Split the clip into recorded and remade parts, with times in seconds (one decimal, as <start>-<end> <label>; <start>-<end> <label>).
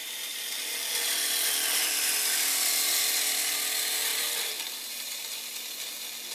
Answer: 0.0-0.7 remade; 0.7-4.1 recorded; 4.1-5.6 remade; 5.6-6.3 recorded